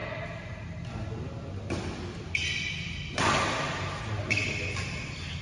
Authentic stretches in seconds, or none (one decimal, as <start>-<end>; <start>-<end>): 0.0-5.4